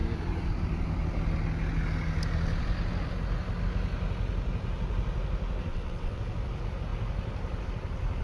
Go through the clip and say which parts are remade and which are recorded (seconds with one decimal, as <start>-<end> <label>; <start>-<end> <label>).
0.0-5.7 recorded; 5.7-6.2 remade; 6.2-8.2 recorded